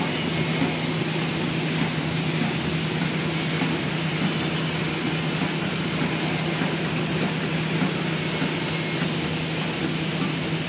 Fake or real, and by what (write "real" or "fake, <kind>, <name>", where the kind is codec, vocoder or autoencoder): real